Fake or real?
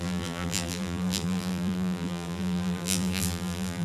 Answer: fake